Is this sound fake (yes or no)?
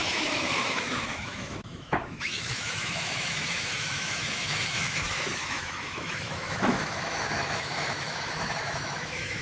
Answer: yes